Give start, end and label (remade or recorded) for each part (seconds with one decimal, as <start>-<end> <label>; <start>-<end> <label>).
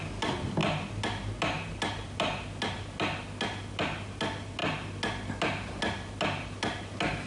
0.0-7.3 recorded